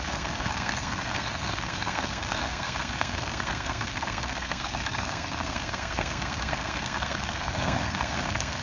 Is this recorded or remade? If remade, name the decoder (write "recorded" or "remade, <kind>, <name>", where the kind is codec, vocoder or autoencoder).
remade, codec, SNAC